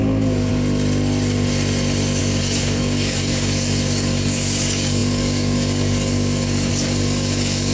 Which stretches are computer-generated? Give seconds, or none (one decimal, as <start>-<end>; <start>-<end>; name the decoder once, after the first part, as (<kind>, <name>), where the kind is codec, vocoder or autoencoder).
0.0-0.5 (codec, DAC); 2.2-7.7